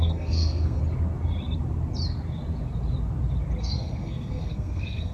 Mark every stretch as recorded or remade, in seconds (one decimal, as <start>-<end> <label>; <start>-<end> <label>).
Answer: 0.0-0.8 remade; 0.8-3.6 recorded; 3.6-5.1 remade